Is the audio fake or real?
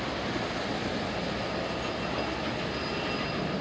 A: real